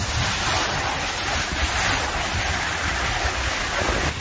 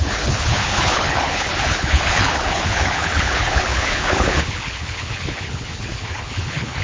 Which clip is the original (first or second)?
first